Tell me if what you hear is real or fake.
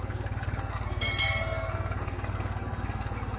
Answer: fake